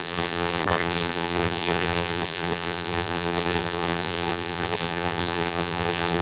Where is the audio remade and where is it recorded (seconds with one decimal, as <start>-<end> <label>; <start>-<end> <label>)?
0.0-6.2 remade